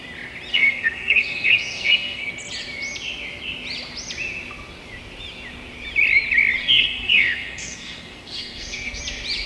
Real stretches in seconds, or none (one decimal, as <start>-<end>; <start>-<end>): 0.0-0.5; 2.3-6.6; 9.0-9.5